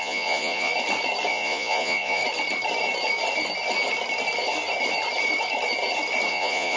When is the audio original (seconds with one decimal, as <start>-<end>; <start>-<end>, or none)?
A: 0.7-1.3; 2.2-6.3